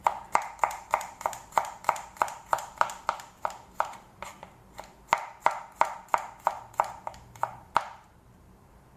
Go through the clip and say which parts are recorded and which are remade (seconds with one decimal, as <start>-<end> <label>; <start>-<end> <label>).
0.0-4.3 remade; 4.3-7.1 recorded; 7.1-9.0 remade